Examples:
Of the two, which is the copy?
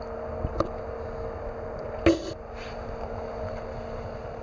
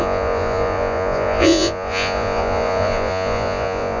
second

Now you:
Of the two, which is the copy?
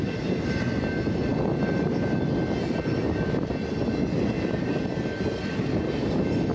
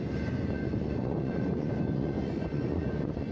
second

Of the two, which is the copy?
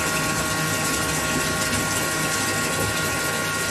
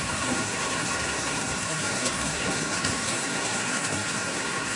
second